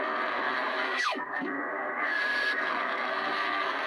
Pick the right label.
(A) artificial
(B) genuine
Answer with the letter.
A